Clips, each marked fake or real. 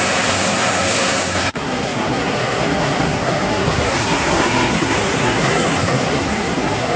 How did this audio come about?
fake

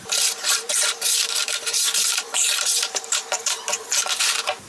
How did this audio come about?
fake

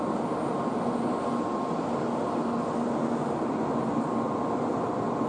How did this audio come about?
real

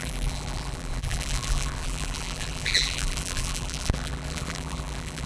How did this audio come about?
fake